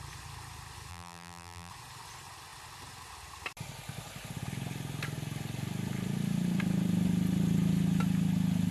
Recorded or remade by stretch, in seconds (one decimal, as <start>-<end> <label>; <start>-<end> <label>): 0.0-0.9 recorded; 0.9-1.7 remade; 1.7-8.7 recorded